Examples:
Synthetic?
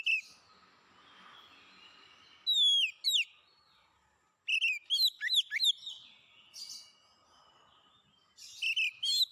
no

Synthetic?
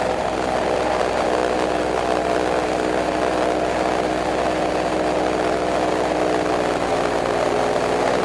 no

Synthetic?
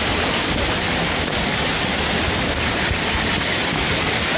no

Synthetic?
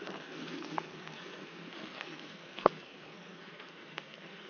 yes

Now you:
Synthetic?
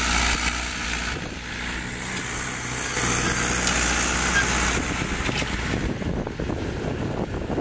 no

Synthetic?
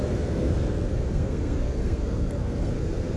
yes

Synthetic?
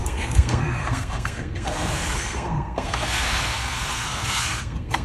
yes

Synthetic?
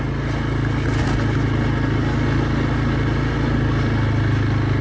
no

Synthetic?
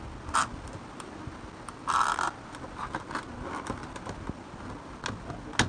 no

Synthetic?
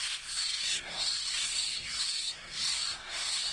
yes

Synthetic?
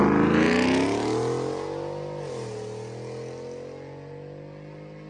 no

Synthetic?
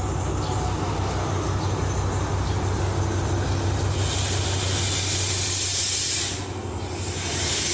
no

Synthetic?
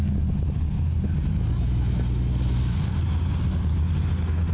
no